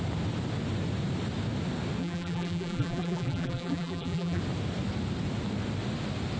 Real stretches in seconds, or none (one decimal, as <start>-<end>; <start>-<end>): 0.0-2.0; 4.4-6.4